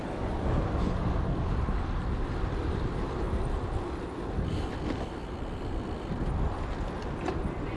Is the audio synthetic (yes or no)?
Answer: no